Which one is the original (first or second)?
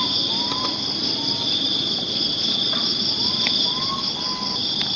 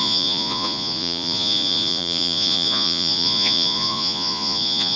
first